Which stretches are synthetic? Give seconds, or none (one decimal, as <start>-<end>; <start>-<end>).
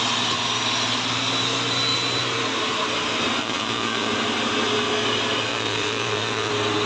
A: 3.4-4.1; 5.5-6.5